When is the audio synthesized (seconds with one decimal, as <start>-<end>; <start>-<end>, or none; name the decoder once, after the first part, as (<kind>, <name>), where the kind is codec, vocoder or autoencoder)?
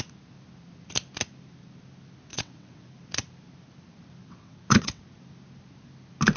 2.3-2.9 (vocoder, WaveNeXt); 4.2-5.0